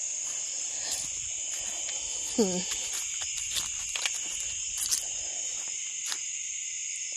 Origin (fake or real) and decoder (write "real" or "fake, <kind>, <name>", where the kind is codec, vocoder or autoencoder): real